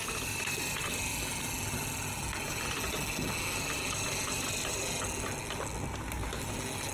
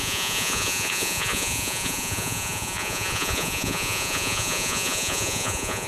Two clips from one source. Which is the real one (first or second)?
first